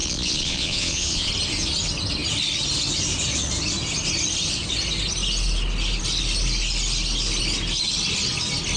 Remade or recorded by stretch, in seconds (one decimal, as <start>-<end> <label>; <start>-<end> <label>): 0.0-1.3 remade; 1.3-8.8 recorded

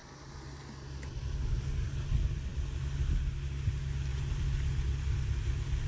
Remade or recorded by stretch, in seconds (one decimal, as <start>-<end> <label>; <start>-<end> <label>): 0.0-5.9 recorded

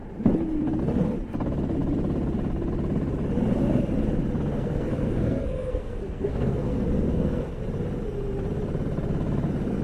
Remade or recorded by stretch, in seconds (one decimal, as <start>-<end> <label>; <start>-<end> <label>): 0.0-4.5 recorded; 4.5-7.6 remade; 7.6-9.8 recorded

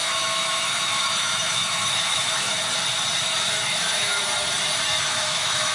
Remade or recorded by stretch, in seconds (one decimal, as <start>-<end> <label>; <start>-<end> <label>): 0.0-2.6 remade; 2.6-3.6 recorded; 3.6-4.2 remade; 4.2-5.0 recorded; 5.0-5.7 remade

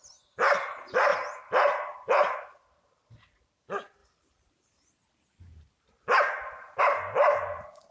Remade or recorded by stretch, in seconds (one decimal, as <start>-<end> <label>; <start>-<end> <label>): 0.0-7.9 recorded

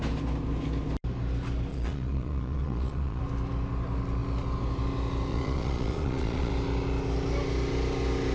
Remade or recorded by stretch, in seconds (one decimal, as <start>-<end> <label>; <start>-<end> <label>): 0.0-1.7 recorded; 1.7-3.2 remade; 3.2-5.3 recorded; 5.3-6.5 remade; 6.5-8.3 recorded

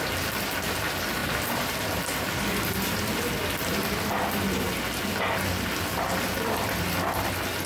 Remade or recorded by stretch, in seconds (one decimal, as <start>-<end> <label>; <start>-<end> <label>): 0.0-7.7 recorded